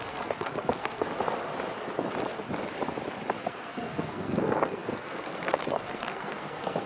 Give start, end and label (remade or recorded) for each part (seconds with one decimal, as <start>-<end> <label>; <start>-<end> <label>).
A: 0.0-1.1 remade; 1.1-3.4 recorded; 3.4-6.9 remade